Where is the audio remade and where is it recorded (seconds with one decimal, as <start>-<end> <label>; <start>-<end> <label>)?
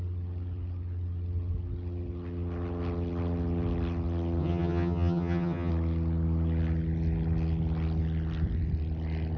0.0-4.4 recorded; 4.4-5.7 remade; 5.7-9.4 recorded